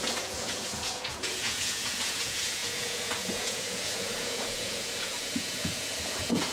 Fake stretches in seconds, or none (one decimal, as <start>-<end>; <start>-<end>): 0.0-6.5